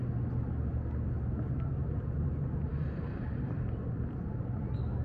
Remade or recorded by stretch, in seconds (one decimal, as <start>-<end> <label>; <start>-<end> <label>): 0.0-1.8 recorded; 1.8-5.0 remade